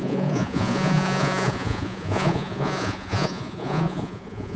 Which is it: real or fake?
fake